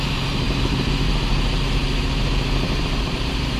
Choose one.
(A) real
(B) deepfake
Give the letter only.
A